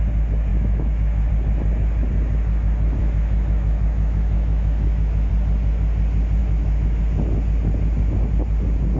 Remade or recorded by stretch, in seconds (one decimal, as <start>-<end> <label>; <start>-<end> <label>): 0.0-0.5 recorded; 0.5-1.3 remade; 1.3-3.0 recorded; 3.0-5.3 remade; 5.3-6.4 recorded; 6.4-7.0 remade; 7.0-9.0 recorded